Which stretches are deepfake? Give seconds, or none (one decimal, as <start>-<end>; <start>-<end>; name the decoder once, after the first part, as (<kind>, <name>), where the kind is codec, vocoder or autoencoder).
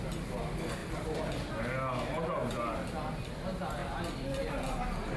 none